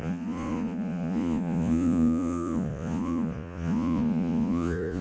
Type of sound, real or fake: fake